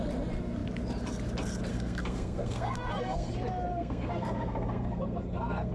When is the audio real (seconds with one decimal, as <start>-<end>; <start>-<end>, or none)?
0.0-1.7; 3.3-3.7